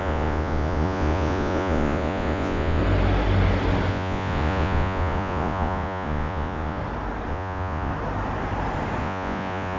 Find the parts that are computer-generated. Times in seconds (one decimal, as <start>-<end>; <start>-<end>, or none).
0.0-2.8; 3.9-6.8; 7.3-7.9; 9.0-9.8